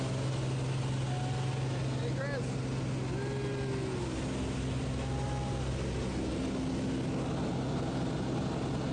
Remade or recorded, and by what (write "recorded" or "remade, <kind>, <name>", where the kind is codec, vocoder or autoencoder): recorded